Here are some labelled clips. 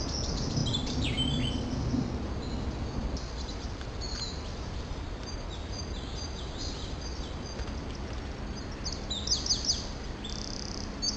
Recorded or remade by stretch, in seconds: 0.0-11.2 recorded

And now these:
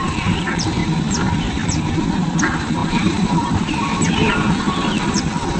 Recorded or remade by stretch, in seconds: 0.0-0.8 remade; 0.8-2.4 recorded; 2.4-5.6 remade

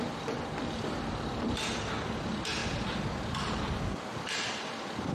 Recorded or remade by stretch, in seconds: 0.0-5.1 recorded

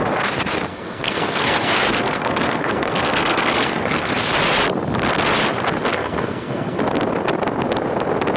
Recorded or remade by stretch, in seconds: 0.0-0.7 recorded; 0.7-4.1 remade; 4.1-5.9 recorded; 5.9-6.8 remade; 6.8-8.4 recorded

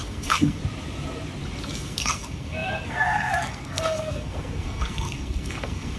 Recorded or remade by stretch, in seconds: 0.0-0.6 remade; 0.6-1.6 recorded; 1.6-6.0 remade

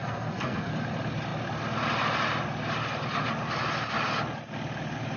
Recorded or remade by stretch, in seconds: 0.0-0.7 remade; 0.7-5.2 recorded

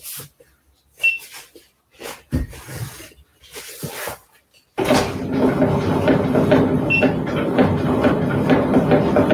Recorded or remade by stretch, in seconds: 0.0-9.3 recorded